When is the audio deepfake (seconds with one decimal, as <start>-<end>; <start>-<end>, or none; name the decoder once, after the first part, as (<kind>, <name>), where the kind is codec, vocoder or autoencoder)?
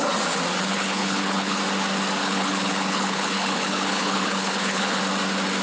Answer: 0.6-1.6 (codec, HILCodec); 2.2-5.0